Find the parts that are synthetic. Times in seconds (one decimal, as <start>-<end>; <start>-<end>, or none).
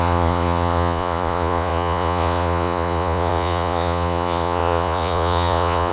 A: 0.0-5.9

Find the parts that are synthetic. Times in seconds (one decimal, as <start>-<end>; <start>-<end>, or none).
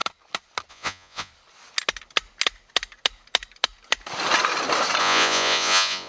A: 0.7-1.3; 5.0-6.1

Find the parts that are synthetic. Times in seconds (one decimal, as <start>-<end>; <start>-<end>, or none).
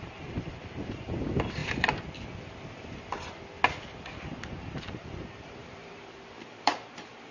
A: 0.0-1.6; 4.5-7.3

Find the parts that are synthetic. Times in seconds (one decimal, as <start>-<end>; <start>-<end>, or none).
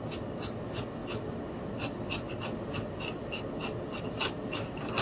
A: none